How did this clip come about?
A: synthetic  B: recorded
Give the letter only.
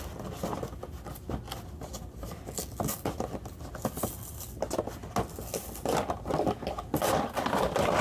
B